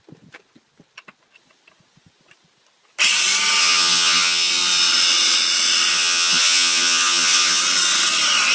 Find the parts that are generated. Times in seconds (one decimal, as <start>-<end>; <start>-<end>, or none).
3.6-4.5; 5.9-7.6